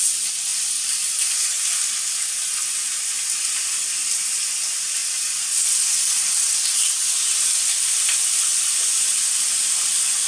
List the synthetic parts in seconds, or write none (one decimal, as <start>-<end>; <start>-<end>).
none